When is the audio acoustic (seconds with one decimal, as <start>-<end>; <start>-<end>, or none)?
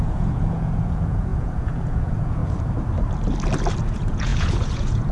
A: 2.4-3.8